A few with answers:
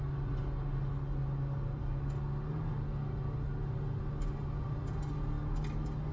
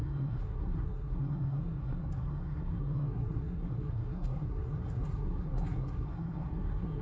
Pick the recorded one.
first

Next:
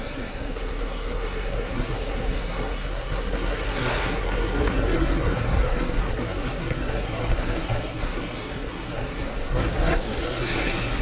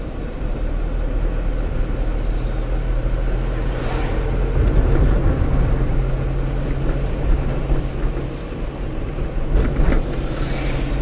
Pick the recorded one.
second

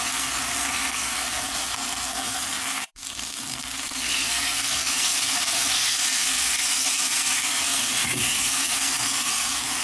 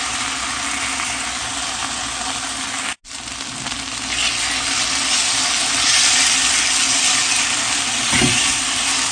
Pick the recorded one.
second